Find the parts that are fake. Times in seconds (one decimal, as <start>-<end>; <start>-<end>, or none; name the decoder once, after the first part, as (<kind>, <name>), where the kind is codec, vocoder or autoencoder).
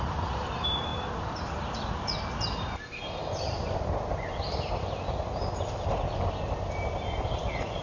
0.9-1.4 (vocoder, BigVGAN v2)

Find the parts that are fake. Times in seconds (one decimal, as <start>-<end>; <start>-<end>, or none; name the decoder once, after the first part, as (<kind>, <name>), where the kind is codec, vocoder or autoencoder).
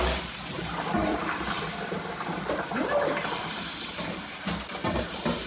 1.1-4.4 (vocoder, BigVGAN v2)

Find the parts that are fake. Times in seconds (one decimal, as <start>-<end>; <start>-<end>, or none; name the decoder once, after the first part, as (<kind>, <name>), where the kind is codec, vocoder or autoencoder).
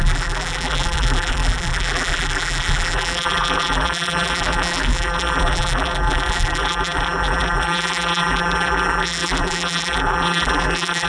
0.0-11.1 (vocoder, BigVGAN v2)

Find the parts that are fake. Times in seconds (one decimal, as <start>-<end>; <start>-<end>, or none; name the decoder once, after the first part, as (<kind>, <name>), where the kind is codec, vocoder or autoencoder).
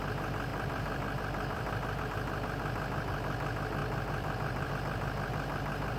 0.5-2.0 (vocoder, BigVGAN v2); 3.8-4.7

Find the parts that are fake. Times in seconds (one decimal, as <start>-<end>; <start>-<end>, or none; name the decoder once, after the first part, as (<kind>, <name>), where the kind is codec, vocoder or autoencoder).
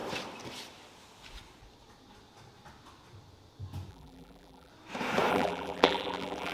3.9-4.7 (vocoder, BigVGAN v2); 5.3-6.5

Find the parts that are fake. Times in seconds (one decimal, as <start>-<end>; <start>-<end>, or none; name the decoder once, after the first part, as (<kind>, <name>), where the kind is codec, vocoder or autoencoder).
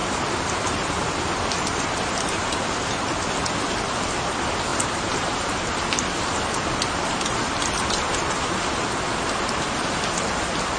0.0-2.8 (vocoder, BigVGAN v2); 4.7-6.6